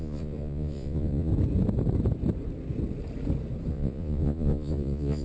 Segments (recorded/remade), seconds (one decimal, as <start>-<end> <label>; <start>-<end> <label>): 0.0-1.3 remade; 1.3-3.7 recorded; 3.7-5.2 remade